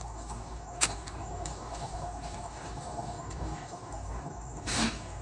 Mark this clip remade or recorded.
remade